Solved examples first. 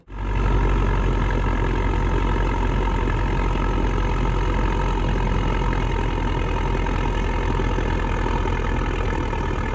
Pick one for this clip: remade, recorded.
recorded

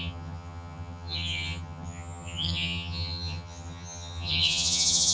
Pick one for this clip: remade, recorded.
remade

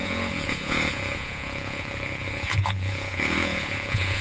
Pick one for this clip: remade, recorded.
remade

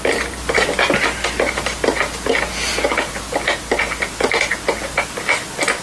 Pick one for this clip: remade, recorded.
recorded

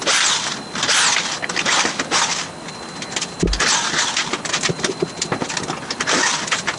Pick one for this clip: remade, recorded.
recorded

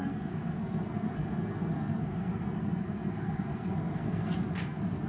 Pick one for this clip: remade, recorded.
remade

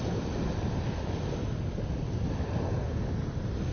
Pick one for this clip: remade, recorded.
recorded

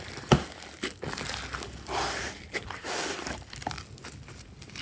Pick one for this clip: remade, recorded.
recorded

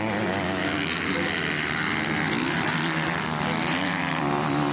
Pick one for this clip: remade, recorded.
recorded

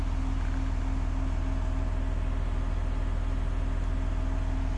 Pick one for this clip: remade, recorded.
recorded